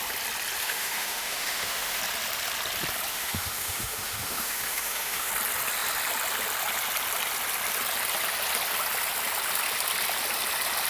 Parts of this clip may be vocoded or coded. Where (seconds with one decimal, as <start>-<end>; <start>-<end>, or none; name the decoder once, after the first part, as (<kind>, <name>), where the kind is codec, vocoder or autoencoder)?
0.6-2.0 (autoencoder, DAC-VAE); 3.1-5.3